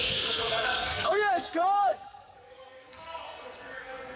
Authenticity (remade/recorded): remade